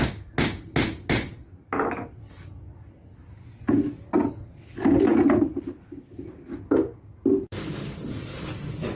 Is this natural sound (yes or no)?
yes